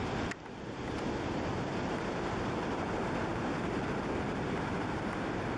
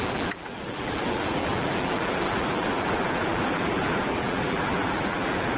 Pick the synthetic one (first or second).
second